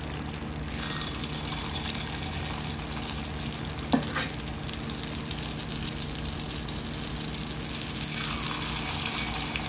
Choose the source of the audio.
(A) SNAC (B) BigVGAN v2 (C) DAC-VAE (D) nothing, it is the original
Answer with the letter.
D